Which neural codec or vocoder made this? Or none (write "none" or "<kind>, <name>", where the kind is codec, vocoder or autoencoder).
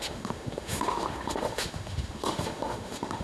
autoencoder, DAC-VAE